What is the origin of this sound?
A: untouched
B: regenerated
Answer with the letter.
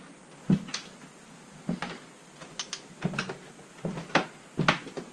A